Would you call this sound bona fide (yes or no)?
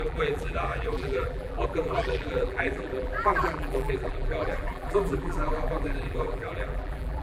no